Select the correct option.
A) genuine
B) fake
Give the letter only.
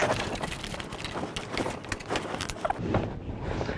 A